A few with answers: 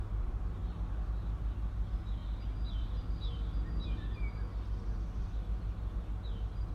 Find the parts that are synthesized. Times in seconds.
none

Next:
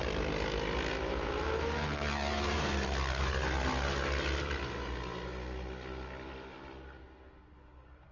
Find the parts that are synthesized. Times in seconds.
none

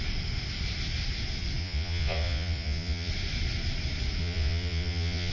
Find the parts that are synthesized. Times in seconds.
1.6-3.1 (vocoder, Vocos); 4.2-5.3

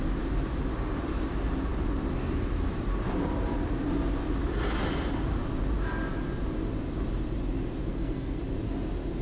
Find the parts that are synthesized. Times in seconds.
7.9-8.4 (codec, SNAC)

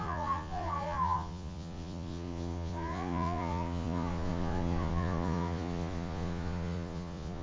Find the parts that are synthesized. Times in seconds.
0.0-7.4 (vocoder, Vocos)